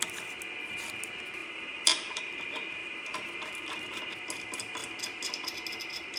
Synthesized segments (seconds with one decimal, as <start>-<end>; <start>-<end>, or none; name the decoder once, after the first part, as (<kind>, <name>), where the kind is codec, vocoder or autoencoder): 1.4-2.2 (vocoder, BigVGAN v2); 2.8-4.0